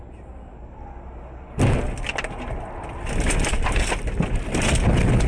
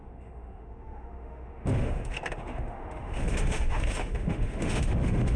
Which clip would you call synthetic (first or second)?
second